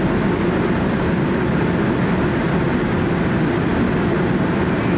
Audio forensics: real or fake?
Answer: real